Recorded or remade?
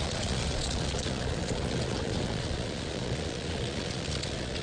remade